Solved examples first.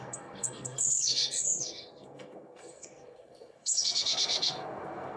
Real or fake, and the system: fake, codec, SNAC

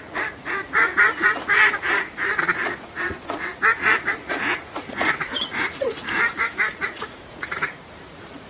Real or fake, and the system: fake, vocoder, Vocos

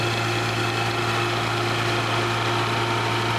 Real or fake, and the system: real